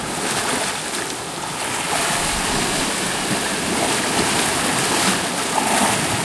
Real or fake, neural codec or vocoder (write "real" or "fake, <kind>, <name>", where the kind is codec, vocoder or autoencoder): fake, vocoder, BigVGAN v2